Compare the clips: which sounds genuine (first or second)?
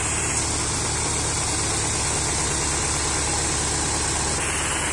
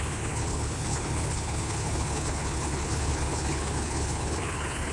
first